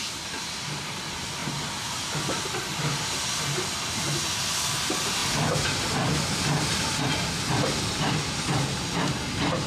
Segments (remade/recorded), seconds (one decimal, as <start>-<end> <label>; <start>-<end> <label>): 0.0-9.7 recorded